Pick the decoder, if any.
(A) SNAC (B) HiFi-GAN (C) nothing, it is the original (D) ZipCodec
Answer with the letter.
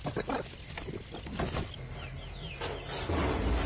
C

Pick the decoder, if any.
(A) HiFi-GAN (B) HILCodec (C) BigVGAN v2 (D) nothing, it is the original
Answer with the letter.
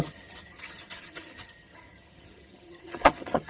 A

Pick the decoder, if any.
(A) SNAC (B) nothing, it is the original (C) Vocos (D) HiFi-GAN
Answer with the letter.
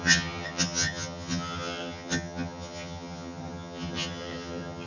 D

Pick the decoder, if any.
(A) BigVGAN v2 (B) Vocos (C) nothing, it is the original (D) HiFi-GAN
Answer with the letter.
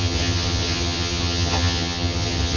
D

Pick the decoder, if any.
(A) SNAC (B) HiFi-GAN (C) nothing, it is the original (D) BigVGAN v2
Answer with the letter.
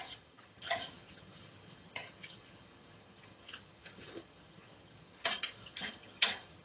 B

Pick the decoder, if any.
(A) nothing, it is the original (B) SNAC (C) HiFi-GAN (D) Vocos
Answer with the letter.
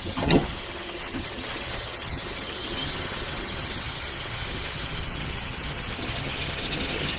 C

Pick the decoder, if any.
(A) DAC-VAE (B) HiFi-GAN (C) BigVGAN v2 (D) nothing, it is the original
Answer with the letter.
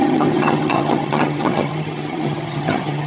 B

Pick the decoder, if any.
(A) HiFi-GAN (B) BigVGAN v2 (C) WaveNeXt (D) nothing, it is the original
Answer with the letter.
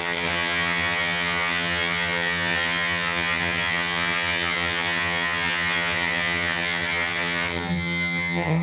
A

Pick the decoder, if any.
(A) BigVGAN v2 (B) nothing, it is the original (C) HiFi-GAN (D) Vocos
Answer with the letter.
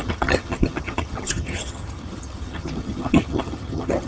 C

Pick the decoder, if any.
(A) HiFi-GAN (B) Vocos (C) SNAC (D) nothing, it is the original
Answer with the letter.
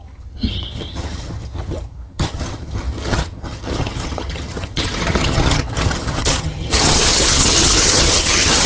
A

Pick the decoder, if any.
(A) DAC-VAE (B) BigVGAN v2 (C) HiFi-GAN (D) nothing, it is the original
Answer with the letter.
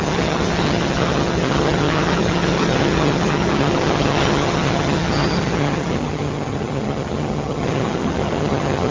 C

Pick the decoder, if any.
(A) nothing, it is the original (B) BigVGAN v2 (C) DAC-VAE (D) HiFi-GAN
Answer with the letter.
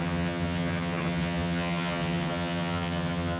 D